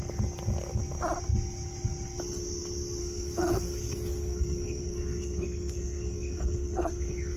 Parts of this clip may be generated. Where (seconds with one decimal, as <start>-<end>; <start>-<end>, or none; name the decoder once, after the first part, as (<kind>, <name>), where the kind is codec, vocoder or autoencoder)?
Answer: 3.0-7.4 (codec, SNAC)